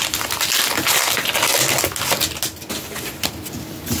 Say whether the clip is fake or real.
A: real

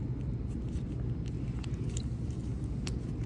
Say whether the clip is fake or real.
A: real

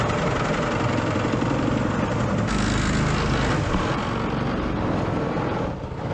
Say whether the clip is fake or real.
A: real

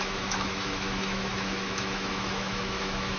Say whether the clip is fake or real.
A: fake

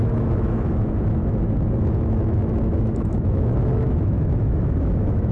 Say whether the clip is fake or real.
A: fake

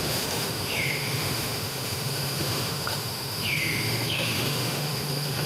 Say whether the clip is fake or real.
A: fake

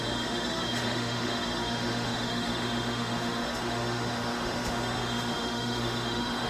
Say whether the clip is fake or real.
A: fake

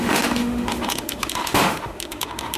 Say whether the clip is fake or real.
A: fake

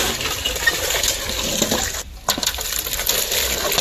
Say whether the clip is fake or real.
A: real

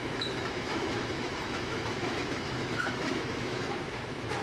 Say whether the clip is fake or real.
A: fake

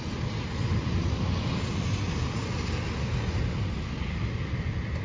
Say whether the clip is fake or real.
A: real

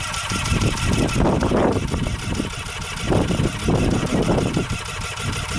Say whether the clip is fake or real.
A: real